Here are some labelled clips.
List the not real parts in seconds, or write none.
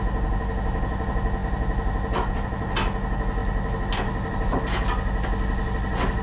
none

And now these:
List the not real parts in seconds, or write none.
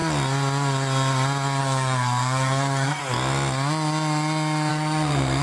1.6-3.0 (codec, SNAC); 4.7-5.4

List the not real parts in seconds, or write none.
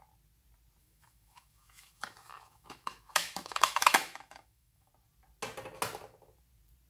0.8-4.9 (autoencoder, DAC-VAE)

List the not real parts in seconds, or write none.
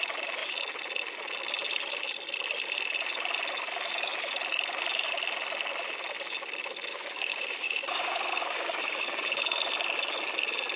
6.9-9.7 (codec, DAC)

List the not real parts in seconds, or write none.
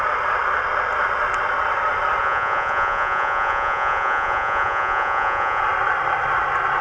2.2-5.6 (vocoder, Vocos)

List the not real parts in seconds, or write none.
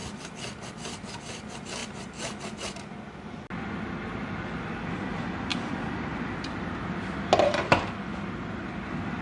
none